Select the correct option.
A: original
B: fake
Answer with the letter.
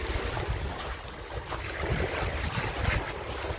A